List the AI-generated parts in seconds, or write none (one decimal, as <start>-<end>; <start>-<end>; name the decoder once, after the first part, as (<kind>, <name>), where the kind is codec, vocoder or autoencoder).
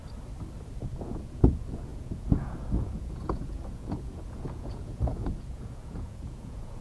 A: 0.8-6.8 (vocoder, Vocos)